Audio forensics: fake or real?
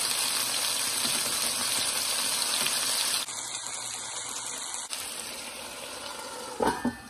real